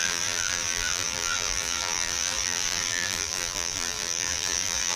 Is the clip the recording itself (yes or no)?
no